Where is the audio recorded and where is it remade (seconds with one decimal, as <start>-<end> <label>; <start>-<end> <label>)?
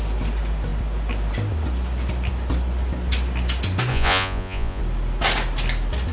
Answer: 0.0-3.9 recorded; 3.9-4.8 remade; 4.8-6.1 recorded